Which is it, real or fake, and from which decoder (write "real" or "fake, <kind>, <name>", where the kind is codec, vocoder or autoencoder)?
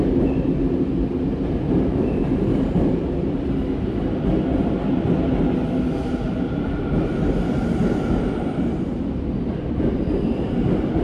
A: real